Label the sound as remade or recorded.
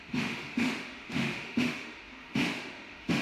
remade